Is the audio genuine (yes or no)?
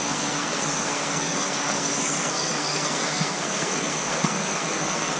no